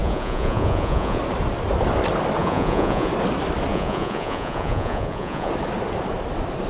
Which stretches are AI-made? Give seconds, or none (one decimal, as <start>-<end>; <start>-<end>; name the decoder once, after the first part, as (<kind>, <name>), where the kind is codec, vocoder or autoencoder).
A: 0.0-1.2 (vocoder, Vocos); 2.4-3.1; 3.7-5.5